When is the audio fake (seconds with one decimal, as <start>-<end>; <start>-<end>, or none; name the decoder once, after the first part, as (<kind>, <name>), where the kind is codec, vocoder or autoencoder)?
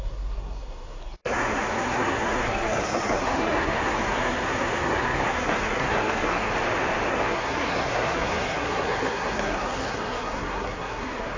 0.0-6.5 (codec, SNAC); 7.1-11.4